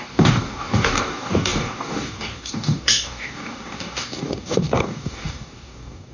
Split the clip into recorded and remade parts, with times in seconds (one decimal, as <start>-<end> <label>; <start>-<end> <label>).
0.0-6.1 remade